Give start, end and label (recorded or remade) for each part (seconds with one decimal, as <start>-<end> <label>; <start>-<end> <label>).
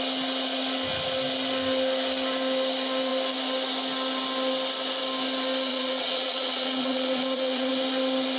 0.0-5.7 recorded; 5.7-7.7 remade; 7.7-8.4 recorded